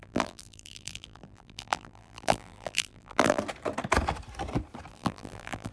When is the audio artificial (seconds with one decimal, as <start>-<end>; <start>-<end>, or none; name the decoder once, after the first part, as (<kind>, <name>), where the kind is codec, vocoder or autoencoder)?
0.0-3.4 (vocoder, BigVGAN v2); 4.9-5.7